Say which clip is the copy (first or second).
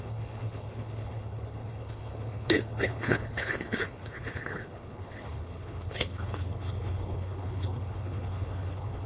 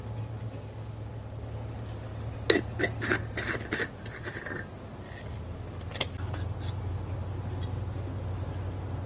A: first